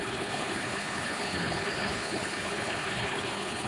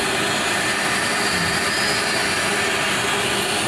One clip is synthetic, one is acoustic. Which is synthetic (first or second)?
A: first